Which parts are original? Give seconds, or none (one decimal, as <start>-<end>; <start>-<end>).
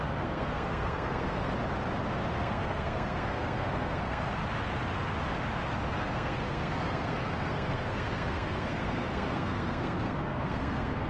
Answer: 1.5-2.3; 4.4-5.9